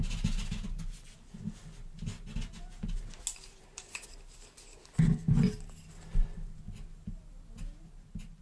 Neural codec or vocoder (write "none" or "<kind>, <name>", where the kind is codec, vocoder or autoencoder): none